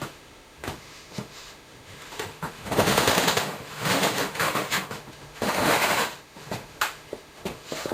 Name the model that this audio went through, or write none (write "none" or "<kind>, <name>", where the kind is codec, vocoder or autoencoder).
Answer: autoencoder, DAC-VAE